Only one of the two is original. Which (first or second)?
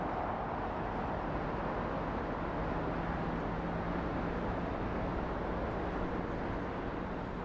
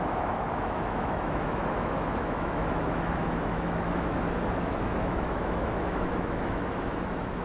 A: first